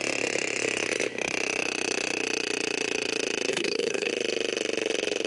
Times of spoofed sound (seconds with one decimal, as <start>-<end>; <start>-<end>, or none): 3.5-4.1